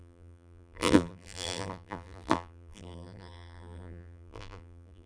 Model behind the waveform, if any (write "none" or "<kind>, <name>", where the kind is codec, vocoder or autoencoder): vocoder, BigVGAN v2